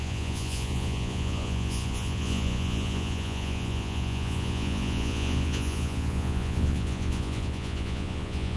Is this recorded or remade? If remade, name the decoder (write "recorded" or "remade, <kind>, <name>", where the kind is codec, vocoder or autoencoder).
remade, vocoder, Vocos